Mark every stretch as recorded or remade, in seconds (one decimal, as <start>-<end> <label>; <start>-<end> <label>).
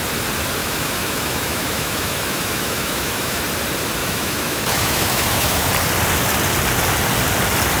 0.0-0.6 recorded; 0.6-3.4 remade; 3.4-4.0 recorded; 4.0-5.7 remade; 5.7-7.8 recorded